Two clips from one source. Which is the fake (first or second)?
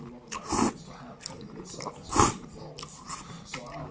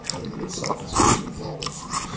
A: first